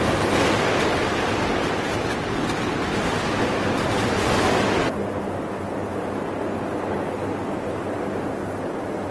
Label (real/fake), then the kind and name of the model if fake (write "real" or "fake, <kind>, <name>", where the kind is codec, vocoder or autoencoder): real